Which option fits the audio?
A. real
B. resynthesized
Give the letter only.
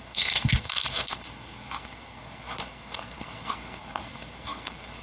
B